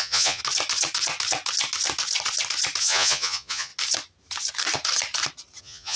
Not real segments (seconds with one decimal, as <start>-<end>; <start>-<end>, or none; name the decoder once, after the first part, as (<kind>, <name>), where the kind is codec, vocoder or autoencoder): 0.0-0.4 (vocoder, Vocos); 2.8-3.7; 5.6-6.0